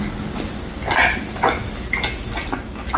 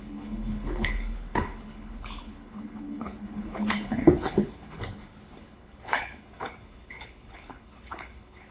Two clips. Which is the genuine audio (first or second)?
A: first